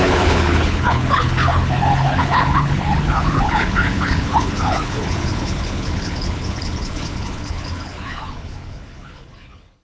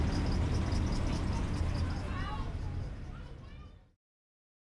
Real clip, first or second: second